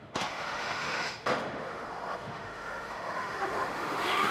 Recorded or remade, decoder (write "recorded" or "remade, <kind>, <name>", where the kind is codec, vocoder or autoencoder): remade, autoencoder, DAC-VAE